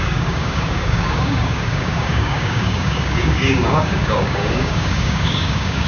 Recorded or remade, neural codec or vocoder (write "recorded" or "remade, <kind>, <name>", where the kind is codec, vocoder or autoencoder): remade, codec, DAC